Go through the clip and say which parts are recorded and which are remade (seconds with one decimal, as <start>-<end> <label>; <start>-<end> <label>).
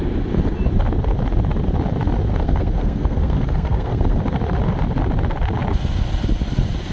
0.0-2.3 recorded; 2.3-4.2 remade; 4.2-6.9 recorded